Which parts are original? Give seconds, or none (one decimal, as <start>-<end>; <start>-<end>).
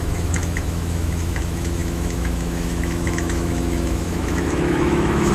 none